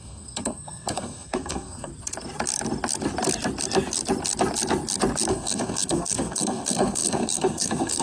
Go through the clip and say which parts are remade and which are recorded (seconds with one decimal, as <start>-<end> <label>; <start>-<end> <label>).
0.0-1.9 remade; 1.9-5.3 recorded; 5.3-8.0 remade